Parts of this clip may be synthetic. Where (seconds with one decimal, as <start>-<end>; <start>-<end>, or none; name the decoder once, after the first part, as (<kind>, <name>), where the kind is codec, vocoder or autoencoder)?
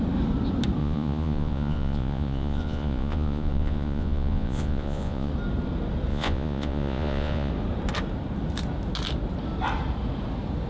0.8-5.3 (vocoder, Vocos); 6.1-7.5